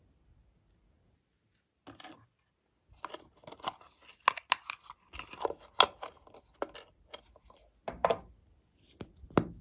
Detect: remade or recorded recorded